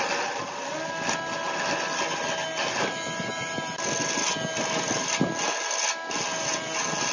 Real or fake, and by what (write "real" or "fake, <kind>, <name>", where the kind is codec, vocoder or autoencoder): real